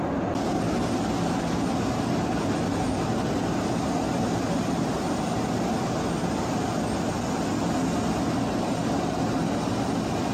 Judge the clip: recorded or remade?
recorded